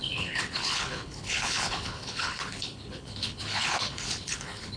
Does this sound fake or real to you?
fake